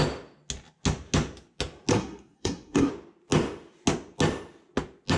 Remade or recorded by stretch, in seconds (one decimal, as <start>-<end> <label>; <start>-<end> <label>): 0.0-1.9 recorded; 1.9-2.9 remade; 2.9-5.2 recorded